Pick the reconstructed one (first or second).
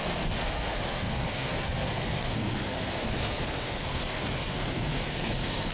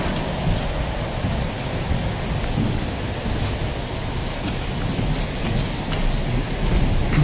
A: first